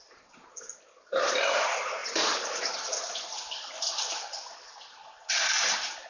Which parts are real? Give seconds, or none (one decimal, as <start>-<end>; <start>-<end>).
0.0-6.1